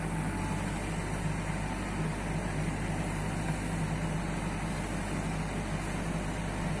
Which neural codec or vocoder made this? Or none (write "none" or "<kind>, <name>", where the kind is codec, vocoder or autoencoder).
none